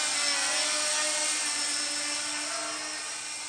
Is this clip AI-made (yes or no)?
no